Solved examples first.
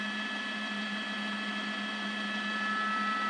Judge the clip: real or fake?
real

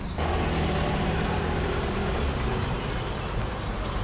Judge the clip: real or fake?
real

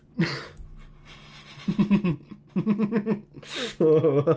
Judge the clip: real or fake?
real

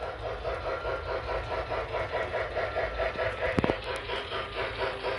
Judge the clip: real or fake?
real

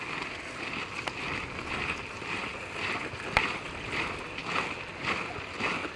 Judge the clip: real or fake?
real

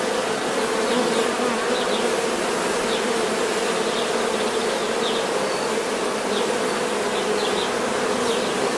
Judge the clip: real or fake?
real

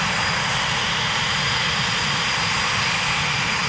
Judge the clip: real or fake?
real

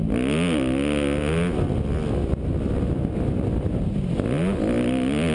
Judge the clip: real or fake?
real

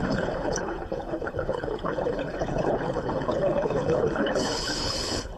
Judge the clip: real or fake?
fake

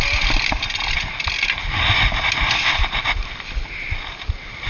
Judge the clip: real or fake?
real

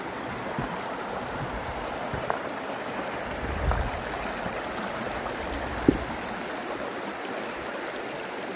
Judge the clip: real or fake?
real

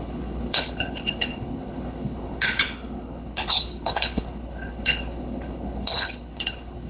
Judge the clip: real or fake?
fake